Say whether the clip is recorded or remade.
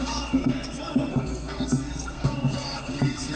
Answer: remade